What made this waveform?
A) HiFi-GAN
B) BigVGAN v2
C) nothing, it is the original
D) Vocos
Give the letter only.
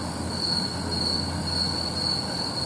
C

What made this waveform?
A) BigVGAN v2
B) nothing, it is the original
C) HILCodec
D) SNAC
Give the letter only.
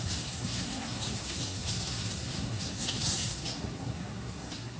D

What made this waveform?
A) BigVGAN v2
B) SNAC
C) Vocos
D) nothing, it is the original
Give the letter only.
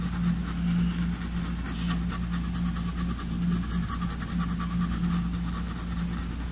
D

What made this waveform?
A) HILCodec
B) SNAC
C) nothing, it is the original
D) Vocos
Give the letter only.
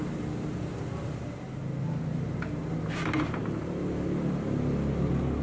C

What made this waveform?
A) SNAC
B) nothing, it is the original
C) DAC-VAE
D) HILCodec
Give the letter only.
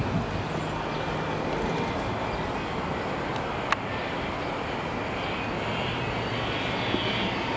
B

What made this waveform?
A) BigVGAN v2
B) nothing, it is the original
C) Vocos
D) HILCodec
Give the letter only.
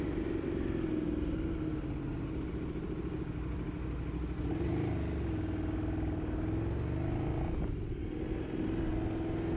B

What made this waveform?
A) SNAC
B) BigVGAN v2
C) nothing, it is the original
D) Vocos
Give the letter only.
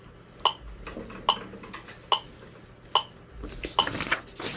C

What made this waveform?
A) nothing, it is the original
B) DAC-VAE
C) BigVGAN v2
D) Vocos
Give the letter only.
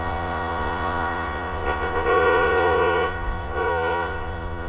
D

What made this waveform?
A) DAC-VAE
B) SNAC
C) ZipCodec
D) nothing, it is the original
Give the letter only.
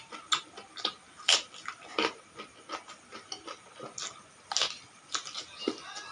D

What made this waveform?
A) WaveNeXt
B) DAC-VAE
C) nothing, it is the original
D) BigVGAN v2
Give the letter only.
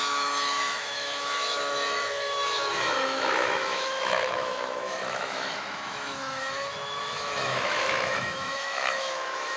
B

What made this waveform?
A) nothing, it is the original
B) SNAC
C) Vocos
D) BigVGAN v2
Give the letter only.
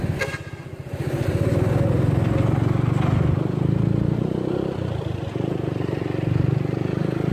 A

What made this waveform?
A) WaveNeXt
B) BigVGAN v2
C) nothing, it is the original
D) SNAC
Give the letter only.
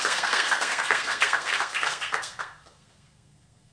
D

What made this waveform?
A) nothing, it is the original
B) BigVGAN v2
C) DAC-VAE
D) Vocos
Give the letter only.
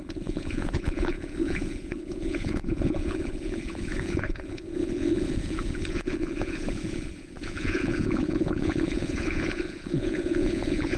D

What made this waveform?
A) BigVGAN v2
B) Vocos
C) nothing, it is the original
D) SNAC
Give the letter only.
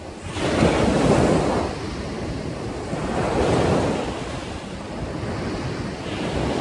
C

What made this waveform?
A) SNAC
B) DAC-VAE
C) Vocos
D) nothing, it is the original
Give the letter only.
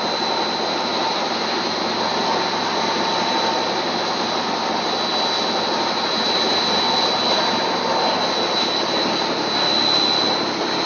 D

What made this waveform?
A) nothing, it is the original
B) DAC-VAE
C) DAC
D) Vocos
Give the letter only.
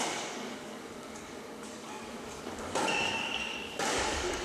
C